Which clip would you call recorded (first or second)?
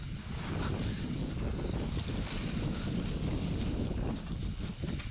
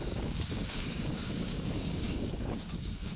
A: first